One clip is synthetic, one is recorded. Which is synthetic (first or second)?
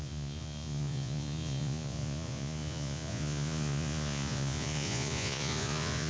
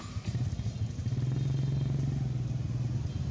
first